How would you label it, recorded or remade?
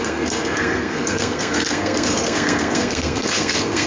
remade